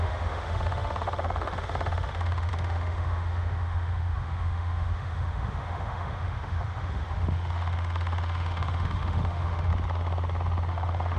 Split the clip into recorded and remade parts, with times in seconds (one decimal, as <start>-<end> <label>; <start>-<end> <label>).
0.0-9.7 remade; 9.7-10.7 recorded; 10.7-11.2 remade